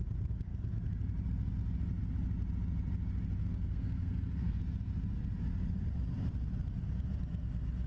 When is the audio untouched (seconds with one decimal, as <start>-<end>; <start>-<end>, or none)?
0.0-3.4; 4.6-7.9